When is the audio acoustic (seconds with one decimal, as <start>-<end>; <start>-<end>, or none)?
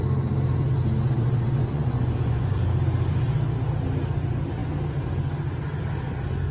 0.0-1.6; 2.6-6.5